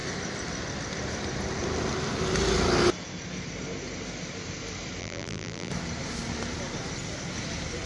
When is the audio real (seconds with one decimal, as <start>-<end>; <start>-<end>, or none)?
0.0-5.0; 5.7-7.9